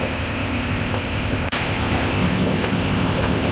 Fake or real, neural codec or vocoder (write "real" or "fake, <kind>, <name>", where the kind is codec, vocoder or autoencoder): fake, codec, ZipCodec